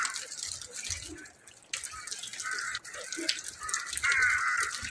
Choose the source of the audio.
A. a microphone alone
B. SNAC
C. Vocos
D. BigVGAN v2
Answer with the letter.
A